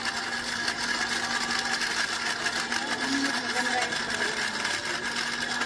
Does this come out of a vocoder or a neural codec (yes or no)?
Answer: no